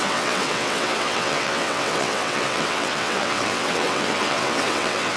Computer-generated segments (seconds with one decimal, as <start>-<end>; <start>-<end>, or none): 0.0-5.2